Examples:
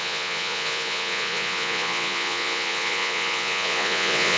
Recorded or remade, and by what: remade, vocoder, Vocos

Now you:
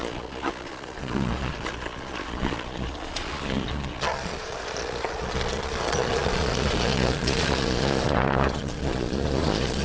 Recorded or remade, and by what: remade, vocoder, Vocos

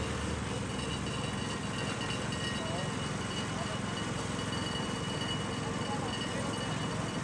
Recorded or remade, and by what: recorded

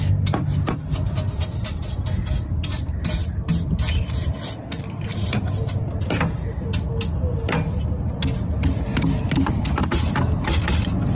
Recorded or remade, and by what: recorded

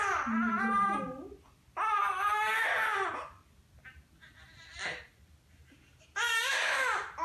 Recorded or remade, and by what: recorded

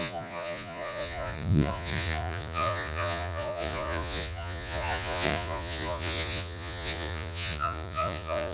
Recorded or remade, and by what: remade, vocoder, Vocos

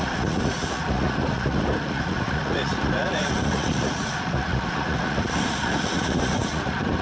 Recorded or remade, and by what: remade, vocoder, Vocos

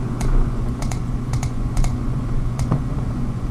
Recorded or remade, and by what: remade, vocoder, Vocos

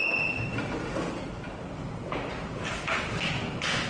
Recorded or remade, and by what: recorded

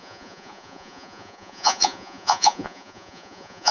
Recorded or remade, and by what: remade, vocoder, Vocos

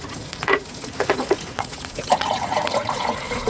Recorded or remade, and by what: remade, vocoder, Vocos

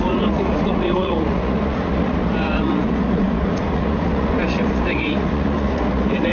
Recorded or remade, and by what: remade, vocoder, Vocos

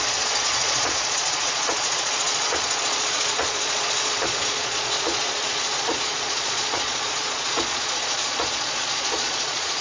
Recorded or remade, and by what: remade, vocoder, Vocos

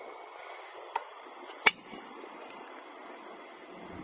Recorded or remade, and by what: recorded